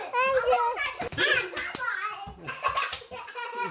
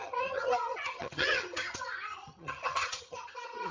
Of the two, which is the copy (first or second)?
second